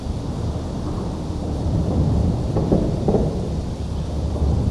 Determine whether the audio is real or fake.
fake